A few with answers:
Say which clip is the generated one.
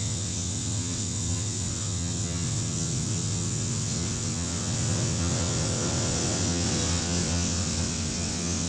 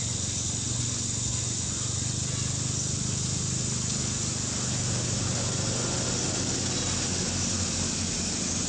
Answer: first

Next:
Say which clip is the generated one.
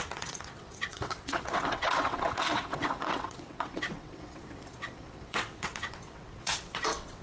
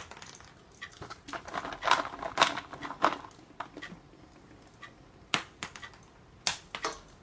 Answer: first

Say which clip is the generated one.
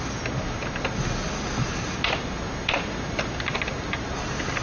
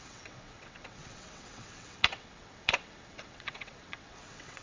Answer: second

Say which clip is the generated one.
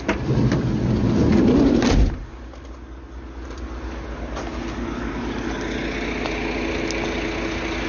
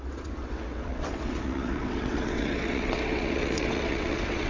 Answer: second